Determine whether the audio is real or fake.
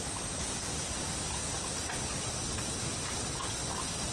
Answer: real